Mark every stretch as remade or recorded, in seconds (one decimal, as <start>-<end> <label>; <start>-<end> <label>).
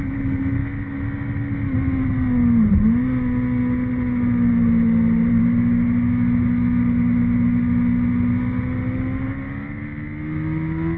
0.0-11.0 recorded